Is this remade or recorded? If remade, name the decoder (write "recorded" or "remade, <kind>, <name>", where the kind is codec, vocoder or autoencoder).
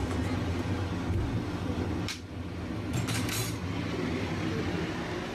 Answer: recorded